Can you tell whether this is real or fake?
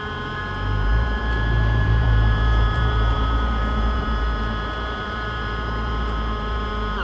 fake